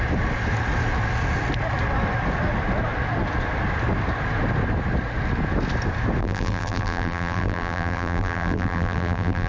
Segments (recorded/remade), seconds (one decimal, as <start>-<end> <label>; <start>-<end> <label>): 0.0-6.2 recorded; 6.2-9.5 remade